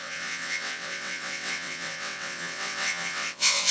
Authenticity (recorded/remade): remade